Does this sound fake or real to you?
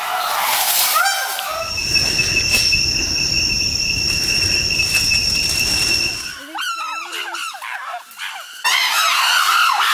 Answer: real